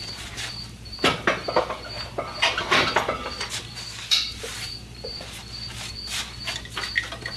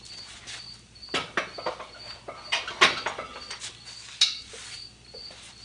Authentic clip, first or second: second